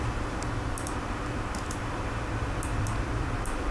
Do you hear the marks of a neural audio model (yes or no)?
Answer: yes